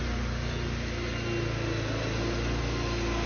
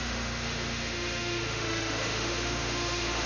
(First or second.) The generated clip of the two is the second